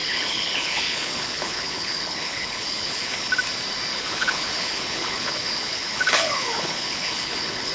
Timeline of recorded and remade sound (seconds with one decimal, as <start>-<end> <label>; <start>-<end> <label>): 0.0-3.3 remade; 3.3-3.9 recorded; 3.9-7.7 remade